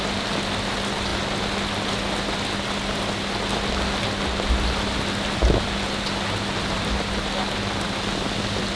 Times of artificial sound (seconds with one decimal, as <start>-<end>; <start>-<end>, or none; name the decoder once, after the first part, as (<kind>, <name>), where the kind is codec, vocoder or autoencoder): none